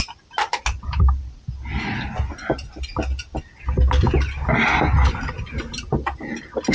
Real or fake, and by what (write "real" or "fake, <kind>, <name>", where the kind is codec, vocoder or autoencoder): real